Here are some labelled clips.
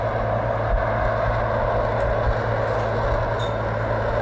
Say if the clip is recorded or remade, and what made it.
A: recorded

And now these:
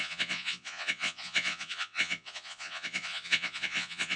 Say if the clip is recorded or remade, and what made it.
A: remade, vocoder, Vocos